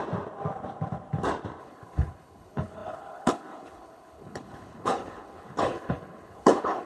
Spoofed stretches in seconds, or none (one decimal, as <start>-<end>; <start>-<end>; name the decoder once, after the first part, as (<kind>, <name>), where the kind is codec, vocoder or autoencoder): 1.6-6.9 (codec, HILCodec)